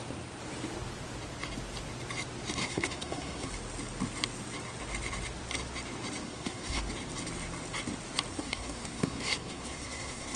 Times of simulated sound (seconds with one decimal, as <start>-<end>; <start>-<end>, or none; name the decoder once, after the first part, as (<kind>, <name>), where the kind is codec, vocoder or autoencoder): 2.6-3.5 (codec, SNAC); 6.2-6.8; 8.3-10.4